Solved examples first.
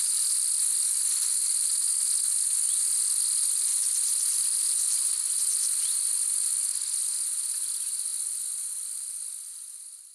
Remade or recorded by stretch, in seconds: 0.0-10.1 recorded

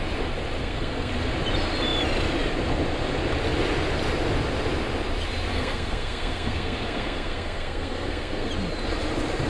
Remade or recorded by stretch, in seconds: 0.0-0.6 recorded; 0.6-1.1 remade; 1.1-5.5 recorded; 5.5-8.5 remade; 8.5-9.5 recorded